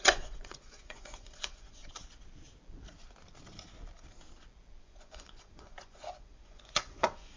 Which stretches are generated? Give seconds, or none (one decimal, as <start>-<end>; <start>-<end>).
0.0-1.8; 4.8-7.4